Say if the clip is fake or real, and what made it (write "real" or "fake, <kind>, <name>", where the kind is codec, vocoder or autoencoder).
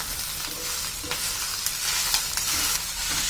real